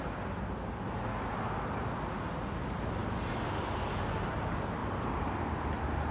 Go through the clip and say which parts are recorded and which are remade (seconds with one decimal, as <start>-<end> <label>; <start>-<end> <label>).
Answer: 0.0-4.8 recorded; 4.8-5.4 remade; 5.4-6.1 recorded